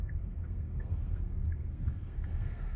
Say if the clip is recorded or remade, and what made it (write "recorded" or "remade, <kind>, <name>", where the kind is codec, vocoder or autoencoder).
remade, codec, SNAC